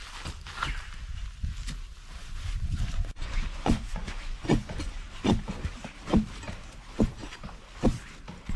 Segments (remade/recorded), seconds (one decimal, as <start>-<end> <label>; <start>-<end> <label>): 0.0-2.2 recorded; 2.2-5.7 remade; 5.7-8.6 recorded